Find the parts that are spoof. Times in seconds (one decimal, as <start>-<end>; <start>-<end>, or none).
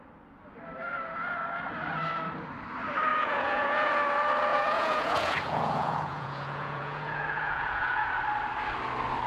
3.1-3.9; 4.5-8.1